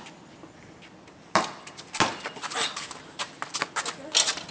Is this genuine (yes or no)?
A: yes